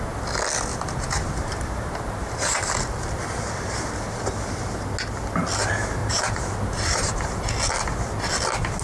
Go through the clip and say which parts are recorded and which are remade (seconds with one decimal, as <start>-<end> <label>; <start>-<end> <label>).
0.0-0.7 recorded; 0.7-2.7 remade; 2.7-6.0 recorded; 6.0-7.4 remade; 7.4-8.8 recorded